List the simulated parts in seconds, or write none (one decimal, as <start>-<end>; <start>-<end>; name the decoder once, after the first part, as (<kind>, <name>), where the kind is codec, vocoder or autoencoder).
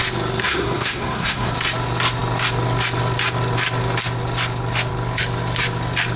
0.4-1.5 (codec, SNAC)